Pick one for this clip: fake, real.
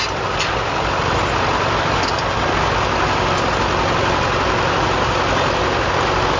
real